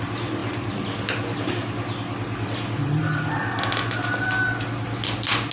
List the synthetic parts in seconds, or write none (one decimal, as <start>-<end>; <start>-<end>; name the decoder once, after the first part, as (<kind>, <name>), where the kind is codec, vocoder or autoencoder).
none